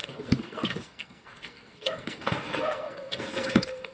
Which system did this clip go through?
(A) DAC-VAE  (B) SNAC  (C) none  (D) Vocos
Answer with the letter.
B